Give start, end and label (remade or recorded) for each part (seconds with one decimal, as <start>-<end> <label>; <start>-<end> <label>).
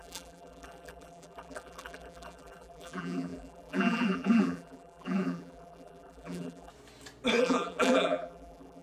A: 0.0-6.7 remade; 6.7-7.4 recorded; 7.4-8.8 remade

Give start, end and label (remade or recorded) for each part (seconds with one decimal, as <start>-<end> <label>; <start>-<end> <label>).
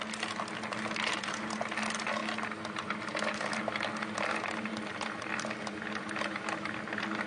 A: 0.0-7.3 recorded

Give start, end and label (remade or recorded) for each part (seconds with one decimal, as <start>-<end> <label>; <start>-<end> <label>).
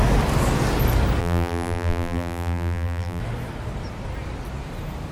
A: 0.0-1.2 recorded; 1.2-3.2 remade; 3.2-5.1 recorded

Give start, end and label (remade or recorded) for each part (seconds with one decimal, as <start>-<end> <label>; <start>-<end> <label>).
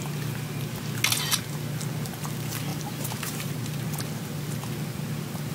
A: 0.0-2.7 recorded; 2.7-3.5 remade; 3.5-5.5 recorded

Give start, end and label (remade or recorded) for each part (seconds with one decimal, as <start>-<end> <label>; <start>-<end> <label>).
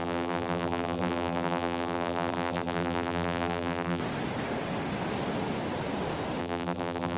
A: 0.0-4.0 remade; 4.0-6.4 recorded; 6.4-7.2 remade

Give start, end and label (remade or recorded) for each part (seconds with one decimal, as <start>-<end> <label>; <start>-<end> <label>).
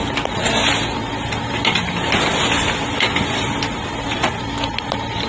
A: 0.0-5.3 recorded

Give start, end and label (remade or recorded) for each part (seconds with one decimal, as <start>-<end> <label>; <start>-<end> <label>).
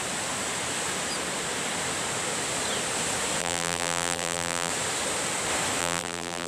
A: 0.0-3.4 recorded; 3.4-4.7 remade; 4.7-5.8 recorded; 5.8-6.5 remade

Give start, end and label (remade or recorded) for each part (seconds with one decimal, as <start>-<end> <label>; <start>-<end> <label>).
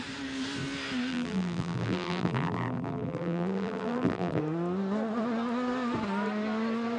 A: 0.0-1.1 recorded; 1.1-4.4 remade; 4.4-7.0 recorded